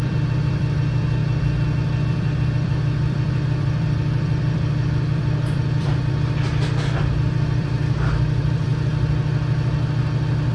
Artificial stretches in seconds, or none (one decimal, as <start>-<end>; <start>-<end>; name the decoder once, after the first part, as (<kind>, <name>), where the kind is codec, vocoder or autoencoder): 0.0-8.7 (vocoder, BigVGAN v2)